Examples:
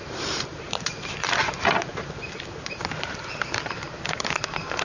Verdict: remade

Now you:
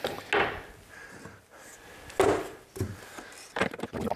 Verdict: recorded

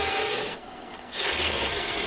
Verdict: remade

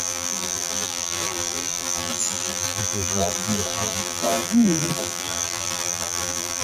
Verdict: remade